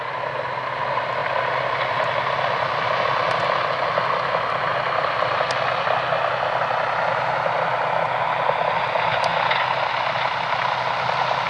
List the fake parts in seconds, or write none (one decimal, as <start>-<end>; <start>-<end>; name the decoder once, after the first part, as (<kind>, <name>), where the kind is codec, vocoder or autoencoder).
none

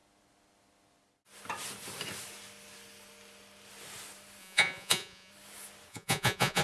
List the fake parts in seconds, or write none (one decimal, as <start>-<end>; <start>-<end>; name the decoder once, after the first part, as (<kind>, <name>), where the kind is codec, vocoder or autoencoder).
4.4-5.3 (vocoder, Vocos); 5.9-6.6

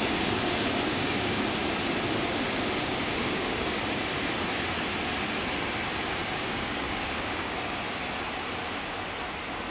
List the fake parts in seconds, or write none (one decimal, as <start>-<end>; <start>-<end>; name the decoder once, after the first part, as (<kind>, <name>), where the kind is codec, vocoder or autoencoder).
0.9-1.4 (codec, DAC); 2.8-3.8; 6.2-7.8

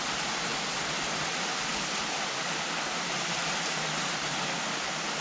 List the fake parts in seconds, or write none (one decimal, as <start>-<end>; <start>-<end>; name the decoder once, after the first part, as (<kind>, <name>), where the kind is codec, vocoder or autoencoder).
none

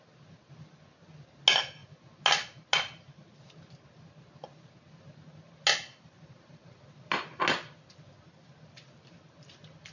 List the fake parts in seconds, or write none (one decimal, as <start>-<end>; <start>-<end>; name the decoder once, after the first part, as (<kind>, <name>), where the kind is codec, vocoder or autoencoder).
none

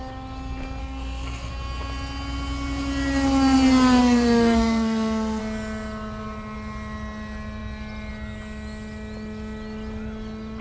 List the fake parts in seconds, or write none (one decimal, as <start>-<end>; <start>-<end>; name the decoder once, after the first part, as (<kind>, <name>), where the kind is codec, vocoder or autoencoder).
0.8-1.5 (codec, SNAC); 4.0-5.4

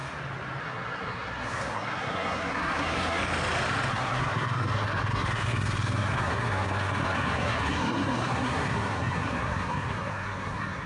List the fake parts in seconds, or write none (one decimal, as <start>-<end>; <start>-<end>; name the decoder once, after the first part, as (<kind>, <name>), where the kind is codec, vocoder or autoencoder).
0.6-3.2 (codec, SNAC); 3.9-10.9

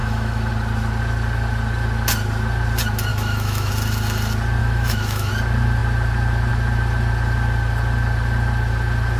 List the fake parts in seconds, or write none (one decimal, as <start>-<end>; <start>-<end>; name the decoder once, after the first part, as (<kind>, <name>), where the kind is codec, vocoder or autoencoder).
0.0-0.5 (autoencoder, DAC-VAE); 3.1-3.7; 4.6-5.3